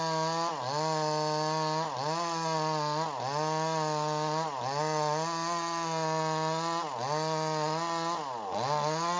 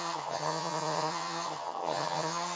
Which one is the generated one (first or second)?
second